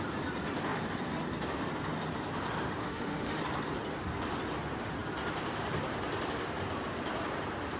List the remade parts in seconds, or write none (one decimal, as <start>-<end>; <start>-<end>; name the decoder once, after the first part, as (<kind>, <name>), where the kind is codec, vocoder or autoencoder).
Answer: 2.8-3.4 (autoencoder, DAC-VAE)